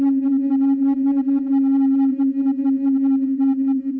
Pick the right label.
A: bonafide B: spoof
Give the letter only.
A